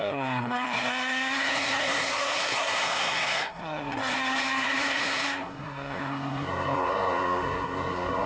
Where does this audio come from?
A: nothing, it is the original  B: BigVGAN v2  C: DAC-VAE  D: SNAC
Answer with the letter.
D